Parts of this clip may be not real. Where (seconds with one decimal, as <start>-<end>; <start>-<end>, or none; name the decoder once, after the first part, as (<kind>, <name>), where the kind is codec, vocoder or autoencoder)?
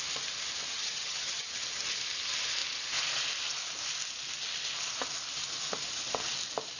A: 0.7-1.5 (vocoder, HiFi-GAN)